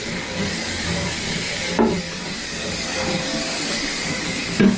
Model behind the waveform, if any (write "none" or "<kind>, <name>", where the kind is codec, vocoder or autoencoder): codec, DAC